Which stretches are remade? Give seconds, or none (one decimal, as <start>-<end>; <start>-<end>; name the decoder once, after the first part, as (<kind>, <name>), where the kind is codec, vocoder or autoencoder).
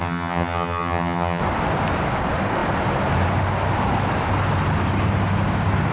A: 0.0-1.4 (vocoder, HiFi-GAN)